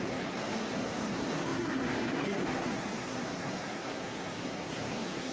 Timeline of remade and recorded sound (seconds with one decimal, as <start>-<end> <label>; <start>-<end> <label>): 0.0-5.3 remade